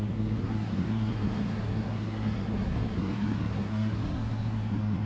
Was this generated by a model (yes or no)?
yes